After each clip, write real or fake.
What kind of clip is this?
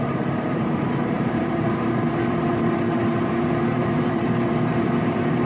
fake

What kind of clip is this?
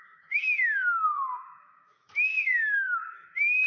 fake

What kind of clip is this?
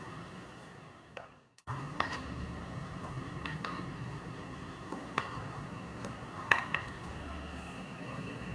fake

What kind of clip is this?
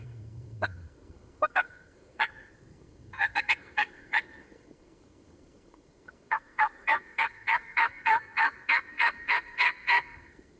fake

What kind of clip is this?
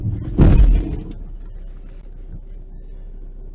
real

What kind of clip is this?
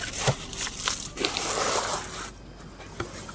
real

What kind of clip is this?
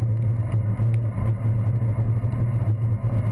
real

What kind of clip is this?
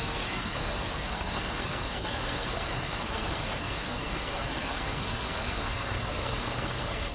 fake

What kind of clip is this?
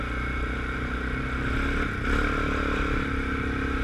real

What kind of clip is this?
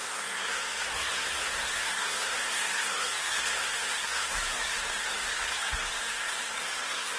fake